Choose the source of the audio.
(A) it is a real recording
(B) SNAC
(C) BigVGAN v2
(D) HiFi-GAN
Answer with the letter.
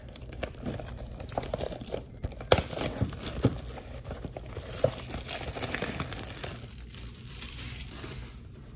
C